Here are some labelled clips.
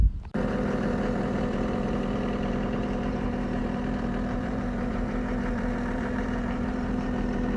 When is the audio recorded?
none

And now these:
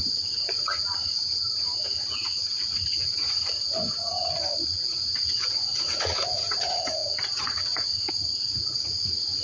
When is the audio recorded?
4.1-4.9

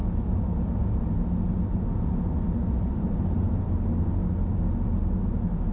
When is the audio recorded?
0.0-2.7; 4.2-5.7

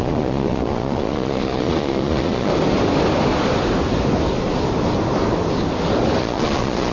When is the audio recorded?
2.5-6.2

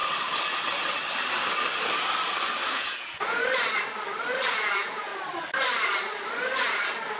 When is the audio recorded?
0.0-2.7; 3.4-4.5; 5.1-7.2

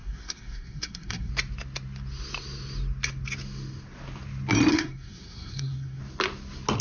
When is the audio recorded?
1.3-4.7; 6.0-6.8

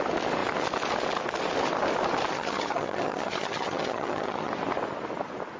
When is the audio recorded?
0.0-2.3; 4.5-5.6

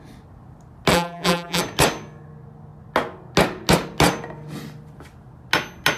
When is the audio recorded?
0.0-0.9; 1.6-6.0